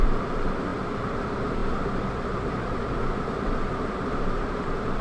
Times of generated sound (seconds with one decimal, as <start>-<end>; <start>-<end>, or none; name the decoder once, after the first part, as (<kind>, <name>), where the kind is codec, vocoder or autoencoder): 0.0-0.7 (vocoder, BigVGAN v2); 1.2-5.0